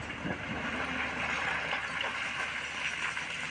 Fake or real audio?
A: real